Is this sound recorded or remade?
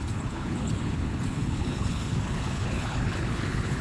remade